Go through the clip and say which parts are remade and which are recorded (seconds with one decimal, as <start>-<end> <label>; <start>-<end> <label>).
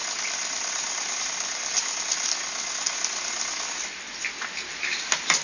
0.0-5.4 recorded